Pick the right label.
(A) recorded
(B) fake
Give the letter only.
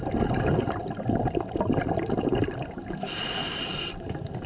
A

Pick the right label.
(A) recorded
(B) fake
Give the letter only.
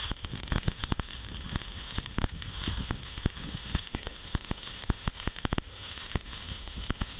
B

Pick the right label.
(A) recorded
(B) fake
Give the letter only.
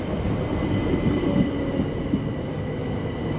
A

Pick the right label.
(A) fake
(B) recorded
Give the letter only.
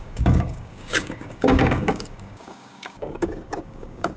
A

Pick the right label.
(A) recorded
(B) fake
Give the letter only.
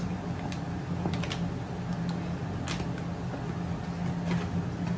A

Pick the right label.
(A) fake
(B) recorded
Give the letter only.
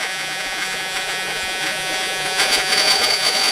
A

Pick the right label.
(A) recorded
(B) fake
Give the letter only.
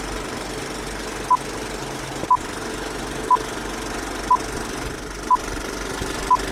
A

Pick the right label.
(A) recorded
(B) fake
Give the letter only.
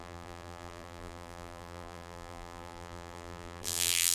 B